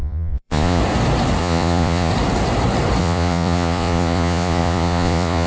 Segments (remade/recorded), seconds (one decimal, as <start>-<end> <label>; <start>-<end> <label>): 0.0-0.8 remade; 0.8-1.4 recorded; 1.4-2.1 remade; 2.1-3.0 recorded; 3.0-5.5 remade